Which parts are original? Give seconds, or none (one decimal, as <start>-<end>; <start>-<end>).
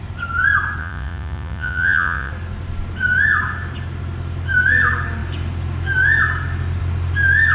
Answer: 0.0-0.8; 2.3-7.5